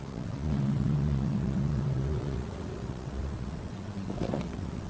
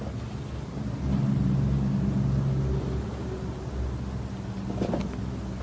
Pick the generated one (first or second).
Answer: first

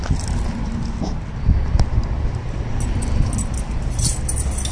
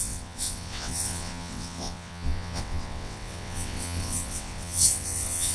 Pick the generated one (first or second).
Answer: second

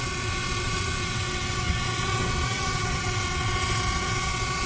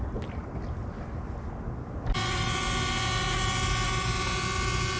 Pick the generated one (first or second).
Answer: first